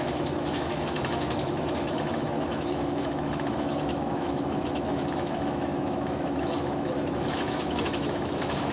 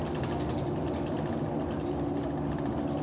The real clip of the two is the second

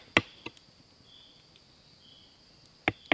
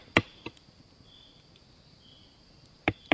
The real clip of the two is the first